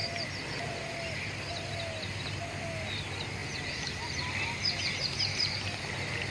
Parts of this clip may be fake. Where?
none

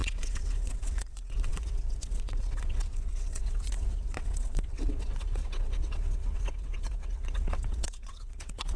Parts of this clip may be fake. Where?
0.0-8.8 (vocoder, WaveNeXt)

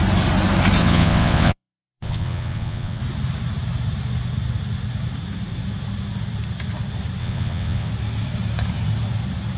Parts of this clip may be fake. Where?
0.8-3.0 (vocoder, WaveNeXt); 7.2-7.9

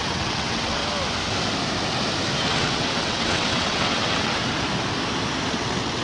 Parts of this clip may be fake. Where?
0.0-0.8 (vocoder, WaveNeXt); 2.4-4.4; 5.5-6.0

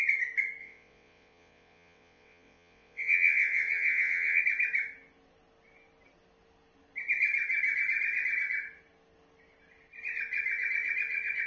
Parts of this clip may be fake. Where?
0.6-4.4 (vocoder, WaveNeXt)

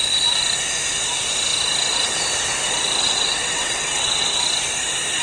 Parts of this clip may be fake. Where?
3.0-4.4 (vocoder, WaveNeXt)

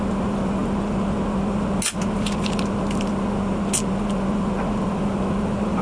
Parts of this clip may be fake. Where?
none

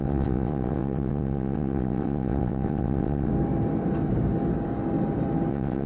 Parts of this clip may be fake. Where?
0.0-3.3 (vocoder, WaveNeXt); 5.5-5.9